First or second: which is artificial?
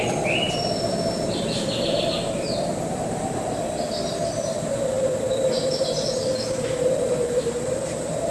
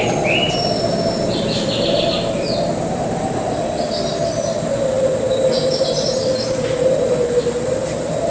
first